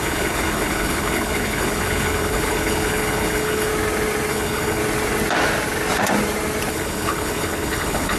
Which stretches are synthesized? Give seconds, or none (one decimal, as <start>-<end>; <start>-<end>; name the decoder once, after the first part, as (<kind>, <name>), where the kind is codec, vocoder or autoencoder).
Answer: 0.0-3.7 (codec, HILCodec); 4.3-4.8; 6.7-8.2